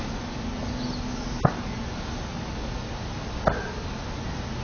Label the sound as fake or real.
real